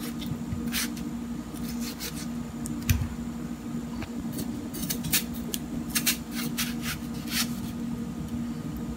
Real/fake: real